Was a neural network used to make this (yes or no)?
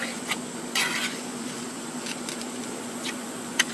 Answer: yes